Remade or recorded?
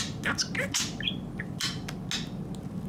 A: recorded